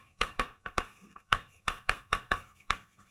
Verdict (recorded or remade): remade